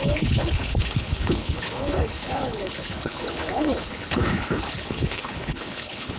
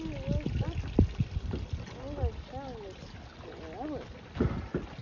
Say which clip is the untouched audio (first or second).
second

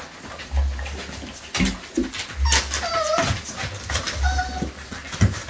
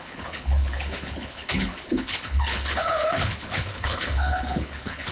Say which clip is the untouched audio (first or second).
first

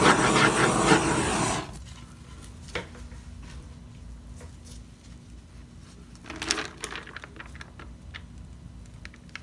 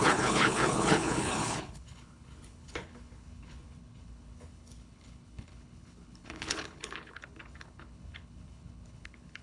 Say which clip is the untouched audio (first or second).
first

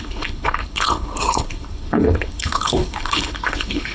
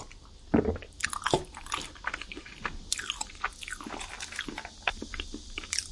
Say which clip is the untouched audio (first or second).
second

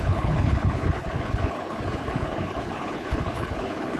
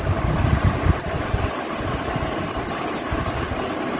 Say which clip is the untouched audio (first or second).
second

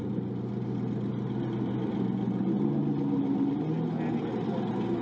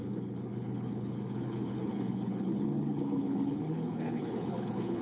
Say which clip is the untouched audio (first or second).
first